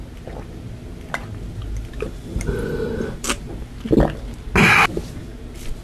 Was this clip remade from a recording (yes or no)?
no